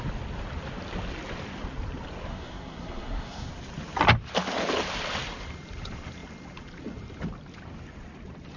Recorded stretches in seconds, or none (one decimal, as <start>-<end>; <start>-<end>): 0.0-2.3; 3.5-8.6

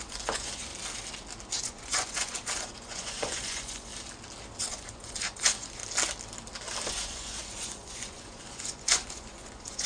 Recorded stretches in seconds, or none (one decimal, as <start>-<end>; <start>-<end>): 0.7-1.6; 3.9-4.7; 5.8-6.9

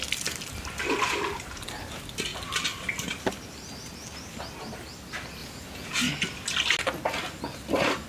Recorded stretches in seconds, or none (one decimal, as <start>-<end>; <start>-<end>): 0.0-5.4; 6.0-8.1

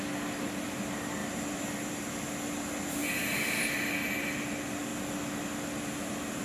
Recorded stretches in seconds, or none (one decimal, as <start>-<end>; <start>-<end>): 0.0-6.4

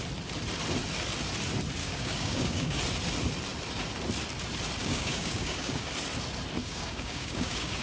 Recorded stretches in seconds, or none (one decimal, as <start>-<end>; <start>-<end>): 0.0-1.8; 2.8-4.8; 5.9-6.6

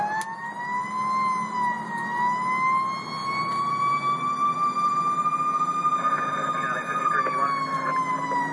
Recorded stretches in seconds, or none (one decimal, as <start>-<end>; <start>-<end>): 0.0-3.2; 7.2-8.5

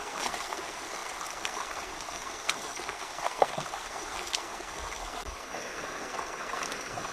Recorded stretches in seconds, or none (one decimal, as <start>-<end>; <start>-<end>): none